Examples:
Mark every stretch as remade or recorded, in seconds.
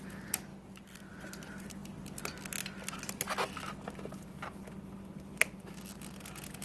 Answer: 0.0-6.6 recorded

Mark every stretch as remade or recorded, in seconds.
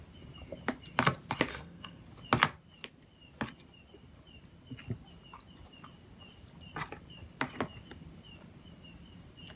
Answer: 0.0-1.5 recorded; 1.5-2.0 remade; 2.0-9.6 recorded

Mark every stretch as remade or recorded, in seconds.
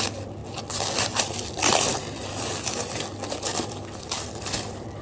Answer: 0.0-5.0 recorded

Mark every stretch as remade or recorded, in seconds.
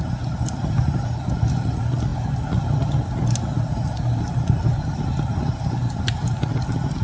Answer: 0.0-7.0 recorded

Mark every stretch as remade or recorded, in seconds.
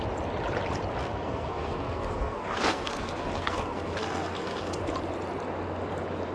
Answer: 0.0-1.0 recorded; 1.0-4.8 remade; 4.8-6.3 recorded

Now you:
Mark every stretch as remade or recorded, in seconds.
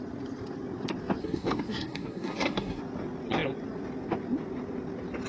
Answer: 0.0-1.2 recorded; 1.2-2.8 remade; 2.8-5.3 recorded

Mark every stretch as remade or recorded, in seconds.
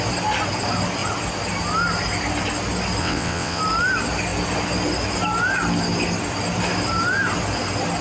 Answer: 0.0-3.0 recorded; 3.0-3.6 remade; 3.6-8.0 recorded